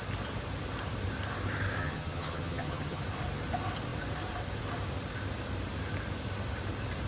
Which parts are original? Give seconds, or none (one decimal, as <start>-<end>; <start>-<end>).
0.0-1.8; 3.0-7.1

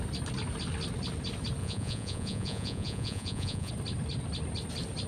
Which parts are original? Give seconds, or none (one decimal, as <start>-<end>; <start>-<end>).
0.0-1.6; 3.7-5.1

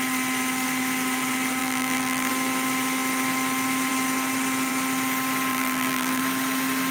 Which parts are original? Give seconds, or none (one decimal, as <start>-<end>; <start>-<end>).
0.0-1.6; 2.3-5.5; 6.2-6.9

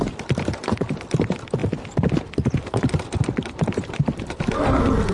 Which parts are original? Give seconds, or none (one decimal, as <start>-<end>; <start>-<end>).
0.0-5.1

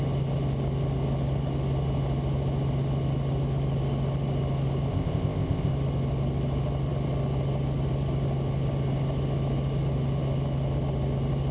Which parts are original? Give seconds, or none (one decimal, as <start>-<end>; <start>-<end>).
0.0-4.9; 5.7-11.5

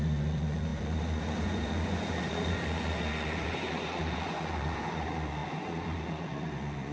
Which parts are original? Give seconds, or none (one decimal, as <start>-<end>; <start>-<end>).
none

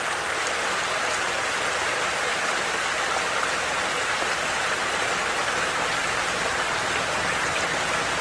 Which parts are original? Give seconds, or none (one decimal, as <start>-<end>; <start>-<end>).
0.0-8.2

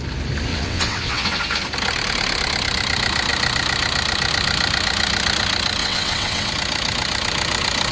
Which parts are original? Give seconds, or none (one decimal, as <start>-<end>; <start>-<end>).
0.0-0.5; 1.4-5.8; 6.5-7.9